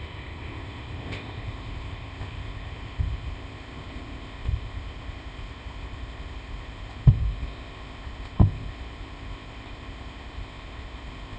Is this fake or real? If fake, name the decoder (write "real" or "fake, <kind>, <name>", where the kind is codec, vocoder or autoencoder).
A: fake, codec, ZipCodec